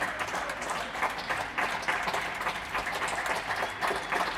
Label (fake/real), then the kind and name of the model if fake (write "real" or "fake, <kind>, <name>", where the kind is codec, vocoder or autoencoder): real